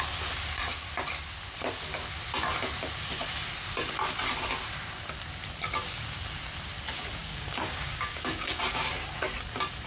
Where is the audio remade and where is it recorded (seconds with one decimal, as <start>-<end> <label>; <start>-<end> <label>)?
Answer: 0.0-7.2 recorded; 7.2-8.6 remade; 8.6-9.9 recorded